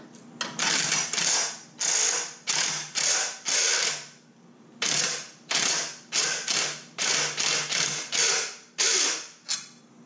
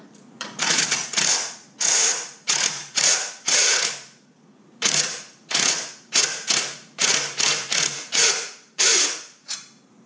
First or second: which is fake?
second